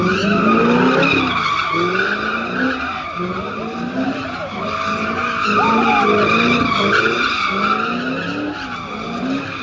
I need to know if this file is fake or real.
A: real